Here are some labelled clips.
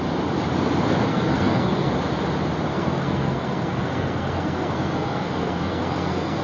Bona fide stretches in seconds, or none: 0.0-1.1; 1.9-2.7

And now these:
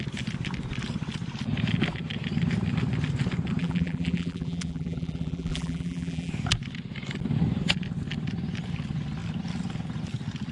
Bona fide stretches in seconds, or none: 0.0-3.6; 6.3-10.5

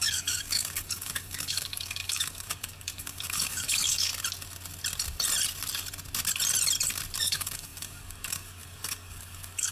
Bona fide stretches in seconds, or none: 4.1-7.2

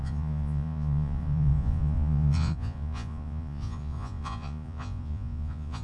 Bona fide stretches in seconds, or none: none

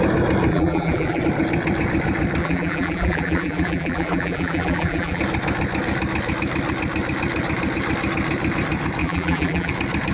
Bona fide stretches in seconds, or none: 0.0-0.5; 1.2-2.4; 5.2-9.0; 9.7-10.1

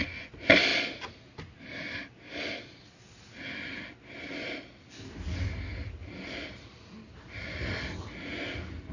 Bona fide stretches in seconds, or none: 0.0-8.9

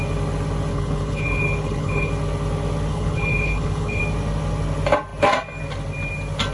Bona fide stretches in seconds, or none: 0.0-0.7; 2.1-2.9; 4.0-6.5

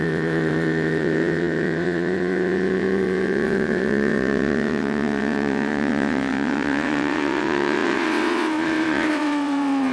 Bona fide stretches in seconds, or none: none